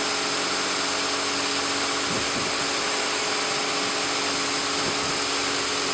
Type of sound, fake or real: real